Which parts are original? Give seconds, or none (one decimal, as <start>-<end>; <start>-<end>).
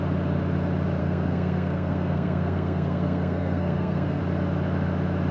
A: 0.0-1.0; 4.2-5.3